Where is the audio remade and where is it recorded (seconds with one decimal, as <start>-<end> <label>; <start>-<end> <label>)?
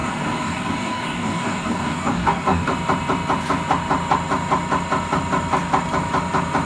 0.0-2.7 remade; 2.7-6.7 recorded